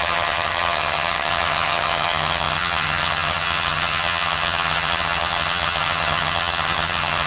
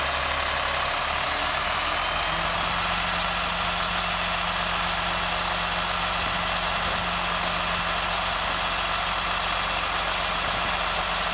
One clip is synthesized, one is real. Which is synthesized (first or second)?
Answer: first